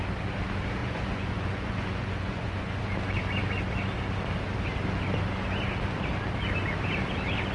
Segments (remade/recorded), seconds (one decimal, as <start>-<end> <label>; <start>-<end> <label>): 0.0-0.8 recorded; 0.8-2.8 remade; 2.8-7.5 recorded